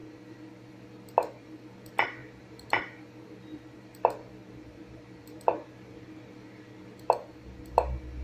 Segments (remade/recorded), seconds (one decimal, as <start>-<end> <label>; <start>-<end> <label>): 0.0-2.2 recorded; 2.2-2.7 remade; 2.7-4.4 recorded; 4.4-6.2 remade; 6.2-8.2 recorded